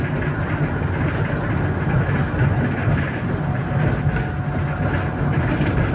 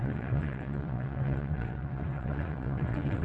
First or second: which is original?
first